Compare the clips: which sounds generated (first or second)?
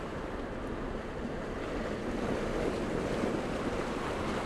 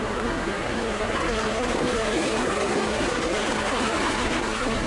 second